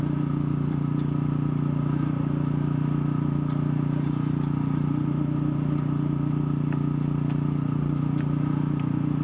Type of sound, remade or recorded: remade